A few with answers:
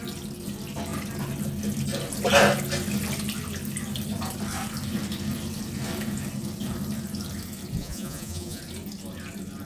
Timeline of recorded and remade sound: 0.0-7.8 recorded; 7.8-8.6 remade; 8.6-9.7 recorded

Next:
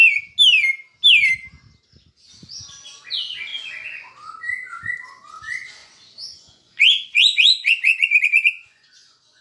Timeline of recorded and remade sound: 0.0-3.5 recorded; 3.5-4.1 remade; 4.1-5.8 recorded; 5.8-9.4 remade

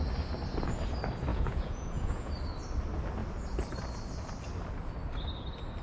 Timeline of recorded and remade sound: 0.0-1.3 recorded; 1.3-2.3 remade; 2.3-5.8 recorded

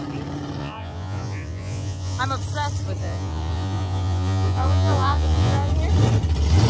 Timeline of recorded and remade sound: 0.0-0.6 recorded; 0.6-2.2 remade; 2.2-3.0 recorded; 3.0-5.7 remade; 5.7-6.7 recorded

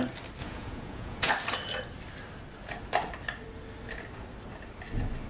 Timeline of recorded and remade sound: 0.0-0.4 recorded; 0.4-1.3 remade; 1.3-5.3 recorded

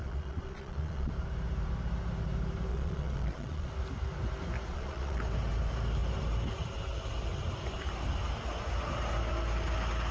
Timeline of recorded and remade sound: 0.0-1.1 remade; 1.1-2.7 recorded; 2.7-3.7 remade; 3.7-4.7 recorded; 4.7-5.2 remade; 5.2-10.1 recorded